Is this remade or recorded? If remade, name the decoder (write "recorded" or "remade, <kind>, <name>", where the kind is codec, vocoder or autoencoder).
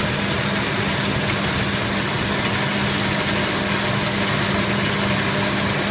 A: recorded